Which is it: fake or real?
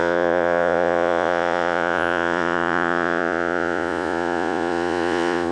fake